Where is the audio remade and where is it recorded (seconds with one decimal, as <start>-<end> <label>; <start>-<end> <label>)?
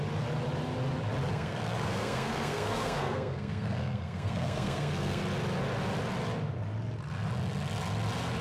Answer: 0.0-1.3 recorded; 1.3-5.2 remade; 5.2-8.4 recorded